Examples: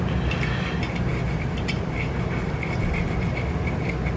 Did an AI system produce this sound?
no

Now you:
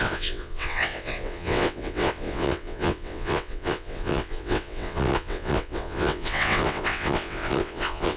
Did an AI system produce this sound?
yes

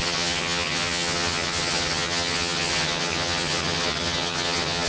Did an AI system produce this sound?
yes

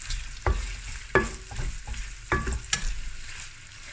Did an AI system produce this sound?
no